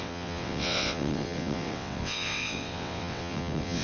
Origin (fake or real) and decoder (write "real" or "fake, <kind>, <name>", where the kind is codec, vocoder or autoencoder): fake, vocoder, WaveNeXt